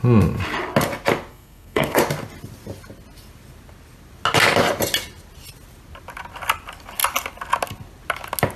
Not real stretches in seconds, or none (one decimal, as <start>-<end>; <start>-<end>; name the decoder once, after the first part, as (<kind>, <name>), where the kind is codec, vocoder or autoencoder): 1.3-2.0 (codec, SNAC)